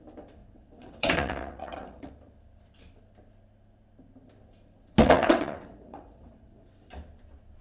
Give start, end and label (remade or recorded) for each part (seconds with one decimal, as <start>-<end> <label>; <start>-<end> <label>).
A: 0.0-0.4 recorded; 0.4-2.1 remade; 2.1-5.0 recorded; 5.0-6.9 remade; 6.9-7.6 recorded